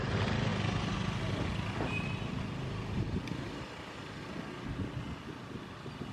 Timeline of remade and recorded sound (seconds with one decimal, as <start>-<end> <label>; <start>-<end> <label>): 0.0-6.1 recorded